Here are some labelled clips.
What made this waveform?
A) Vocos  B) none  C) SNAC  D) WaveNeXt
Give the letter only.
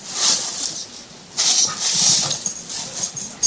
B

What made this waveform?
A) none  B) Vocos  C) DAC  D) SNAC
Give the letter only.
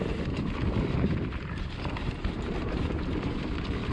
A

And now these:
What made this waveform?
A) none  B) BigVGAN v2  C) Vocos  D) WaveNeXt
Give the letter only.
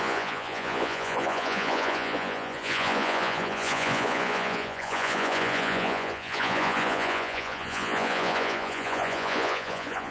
C